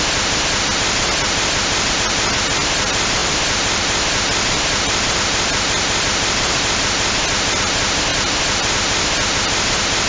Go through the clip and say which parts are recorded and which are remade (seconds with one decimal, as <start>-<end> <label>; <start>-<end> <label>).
0.0-10.1 recorded